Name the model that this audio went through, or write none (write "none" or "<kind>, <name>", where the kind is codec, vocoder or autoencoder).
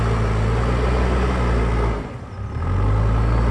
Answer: none